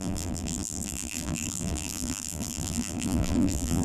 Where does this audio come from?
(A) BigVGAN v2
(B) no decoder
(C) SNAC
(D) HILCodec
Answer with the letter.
A